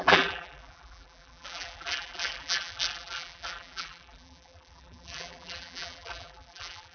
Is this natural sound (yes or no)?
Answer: no